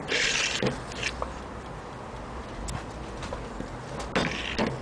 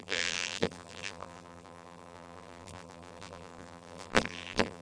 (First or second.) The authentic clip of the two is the first